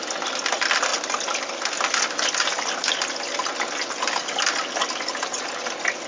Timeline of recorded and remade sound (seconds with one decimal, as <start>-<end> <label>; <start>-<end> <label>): 0.0-6.1 recorded